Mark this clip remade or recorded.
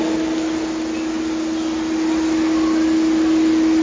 recorded